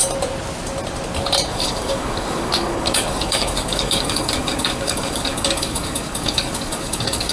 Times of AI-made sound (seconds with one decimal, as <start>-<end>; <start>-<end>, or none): 1.5-7.3